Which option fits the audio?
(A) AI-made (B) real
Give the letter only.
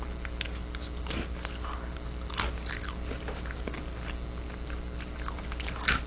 B